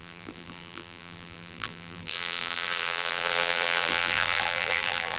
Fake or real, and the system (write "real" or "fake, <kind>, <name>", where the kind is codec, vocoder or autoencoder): fake, vocoder, BigVGAN v2